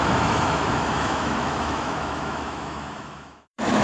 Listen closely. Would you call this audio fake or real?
fake